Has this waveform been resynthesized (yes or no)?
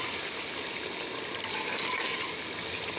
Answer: no